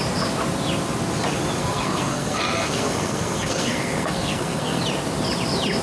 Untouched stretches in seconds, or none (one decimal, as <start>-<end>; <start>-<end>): 0.0-1.6; 4.8-5.8